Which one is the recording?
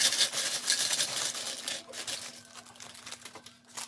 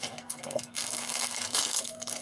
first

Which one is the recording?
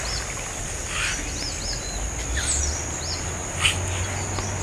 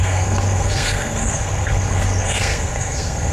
first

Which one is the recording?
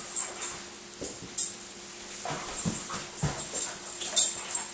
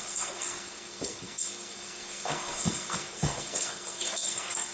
first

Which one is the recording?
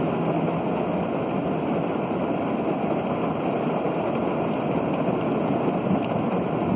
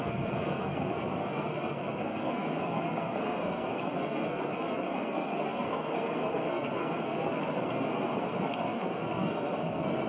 first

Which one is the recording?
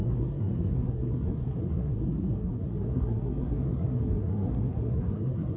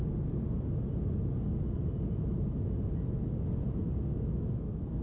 second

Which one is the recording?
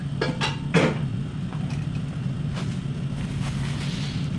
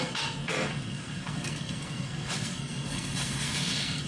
first